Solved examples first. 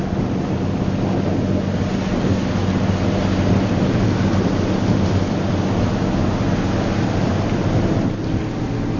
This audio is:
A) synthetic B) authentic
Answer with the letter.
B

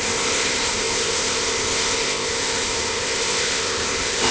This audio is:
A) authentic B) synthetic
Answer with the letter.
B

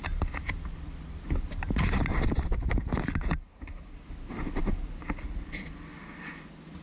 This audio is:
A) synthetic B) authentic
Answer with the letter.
B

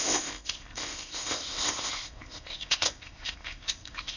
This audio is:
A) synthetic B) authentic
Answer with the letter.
A